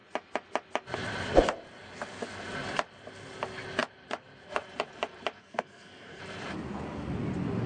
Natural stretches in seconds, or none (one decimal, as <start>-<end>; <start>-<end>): 0.0-5.4; 6.2-7.7